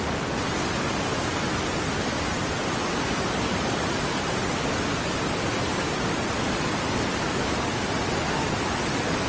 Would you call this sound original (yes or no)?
yes